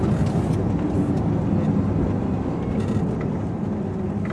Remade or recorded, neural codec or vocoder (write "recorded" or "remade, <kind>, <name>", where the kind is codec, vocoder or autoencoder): recorded